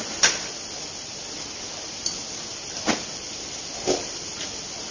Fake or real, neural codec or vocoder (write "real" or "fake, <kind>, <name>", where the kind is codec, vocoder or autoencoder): real